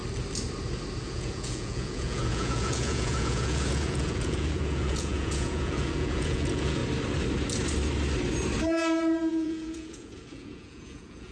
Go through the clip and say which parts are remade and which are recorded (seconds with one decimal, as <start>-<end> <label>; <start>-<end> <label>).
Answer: 0.0-1.0 recorded; 1.0-6.8 remade; 6.8-9.3 recorded; 9.3-11.3 remade